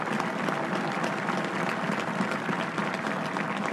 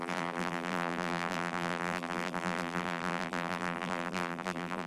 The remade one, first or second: second